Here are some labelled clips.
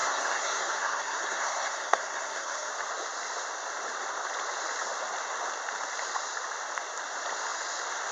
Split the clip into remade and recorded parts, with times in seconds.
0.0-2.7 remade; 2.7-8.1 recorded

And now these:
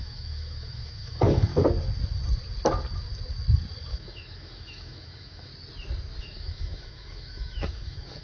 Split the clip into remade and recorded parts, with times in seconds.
0.0-1.5 remade; 1.5-3.9 recorded; 3.9-5.5 remade; 5.5-6.2 recorded; 6.2-8.2 remade

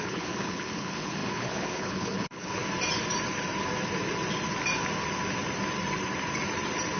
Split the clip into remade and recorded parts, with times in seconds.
0.0-2.6 remade; 2.6-7.0 recorded

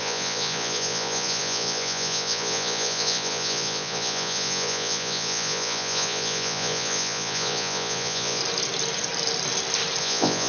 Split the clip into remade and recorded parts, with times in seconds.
0.0-8.4 remade; 8.4-10.0 recorded; 10.0-10.5 remade

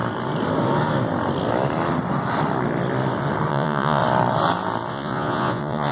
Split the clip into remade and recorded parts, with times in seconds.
0.0-3.5 recorded; 3.5-4.0 remade; 4.0-4.9 recorded; 4.9-5.9 remade